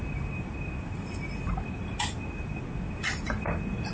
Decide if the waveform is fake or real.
real